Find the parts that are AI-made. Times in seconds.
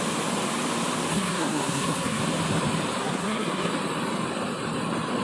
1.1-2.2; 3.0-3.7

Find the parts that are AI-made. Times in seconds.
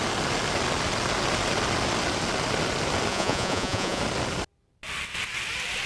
3.1-4.0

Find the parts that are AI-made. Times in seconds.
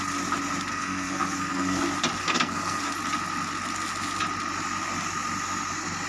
0.7-1.8; 2.2-2.8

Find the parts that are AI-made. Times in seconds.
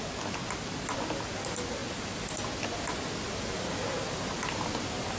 none